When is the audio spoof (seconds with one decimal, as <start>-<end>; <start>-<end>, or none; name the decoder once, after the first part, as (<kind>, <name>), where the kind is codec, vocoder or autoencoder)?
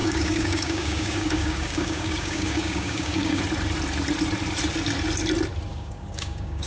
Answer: 0.0-3.4 (codec, DAC); 5.7-6.7